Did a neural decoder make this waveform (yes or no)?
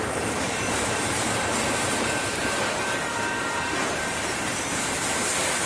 yes